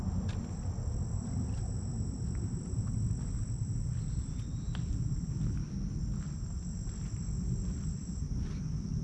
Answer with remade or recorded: recorded